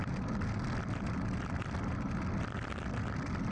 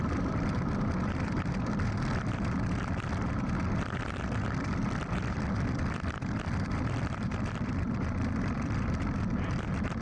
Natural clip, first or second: first